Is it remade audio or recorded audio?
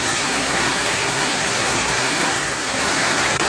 remade